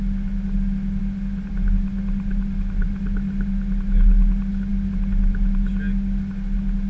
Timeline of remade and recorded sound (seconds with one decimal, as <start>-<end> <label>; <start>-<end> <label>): 0.0-6.9 recorded